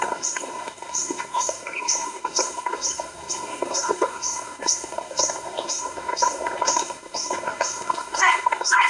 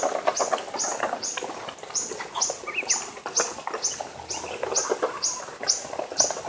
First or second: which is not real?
first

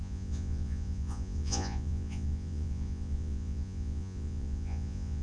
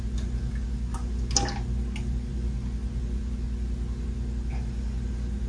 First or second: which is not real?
first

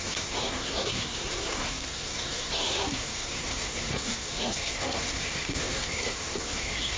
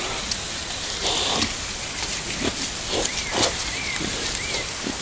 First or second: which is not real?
first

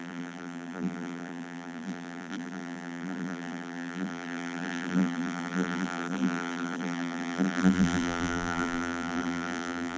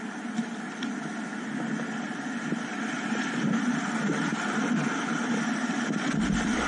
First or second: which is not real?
first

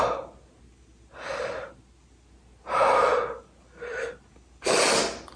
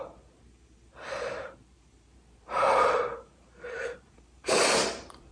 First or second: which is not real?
second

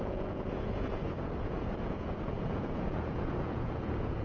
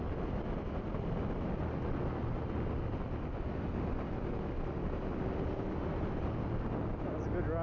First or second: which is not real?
first